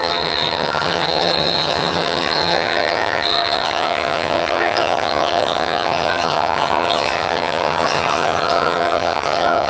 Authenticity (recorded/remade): remade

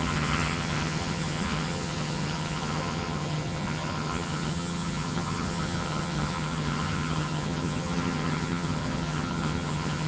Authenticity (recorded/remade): remade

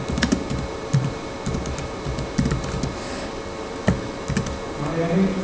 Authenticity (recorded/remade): recorded